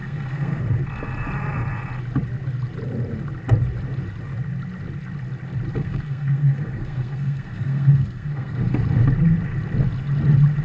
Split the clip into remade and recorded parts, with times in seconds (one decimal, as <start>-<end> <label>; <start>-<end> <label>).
0.0-0.6 remade; 0.6-5.7 recorded; 5.7-8.8 remade; 8.8-10.6 recorded